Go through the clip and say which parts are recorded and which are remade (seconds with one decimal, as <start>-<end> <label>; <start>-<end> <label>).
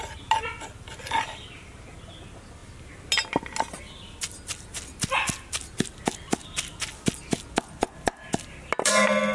0.0-9.3 recorded